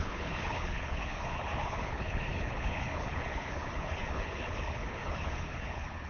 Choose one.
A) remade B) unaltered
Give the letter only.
A